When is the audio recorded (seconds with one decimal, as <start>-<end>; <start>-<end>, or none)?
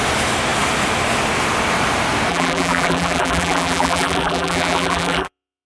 0.0-2.3